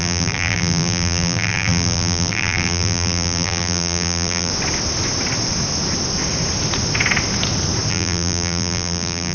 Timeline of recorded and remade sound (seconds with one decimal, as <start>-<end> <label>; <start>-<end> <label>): 0.0-4.5 remade; 4.5-7.9 recorded; 7.9-9.3 remade

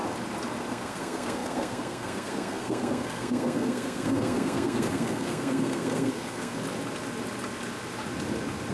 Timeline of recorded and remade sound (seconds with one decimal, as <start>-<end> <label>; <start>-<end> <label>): 0.0-0.7 recorded; 0.7-6.6 remade; 6.6-8.7 recorded